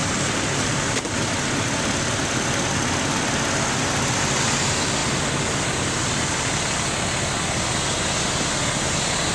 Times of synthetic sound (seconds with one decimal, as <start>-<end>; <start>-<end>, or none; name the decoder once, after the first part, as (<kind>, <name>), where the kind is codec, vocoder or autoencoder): 0.0-1.2 (vocoder, BigVGAN v2)